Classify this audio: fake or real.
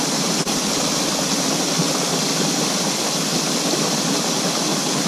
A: real